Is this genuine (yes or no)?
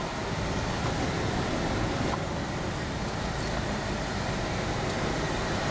yes